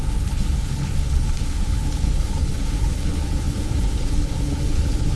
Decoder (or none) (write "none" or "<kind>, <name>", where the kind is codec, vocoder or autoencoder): codec, HILCodec